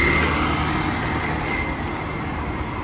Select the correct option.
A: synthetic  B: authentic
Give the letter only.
B